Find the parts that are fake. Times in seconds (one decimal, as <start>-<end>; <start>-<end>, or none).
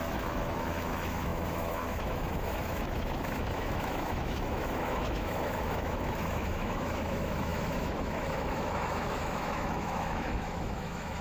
0.0-11.2